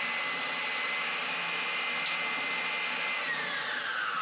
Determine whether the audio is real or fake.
real